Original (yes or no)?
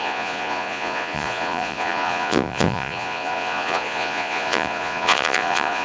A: no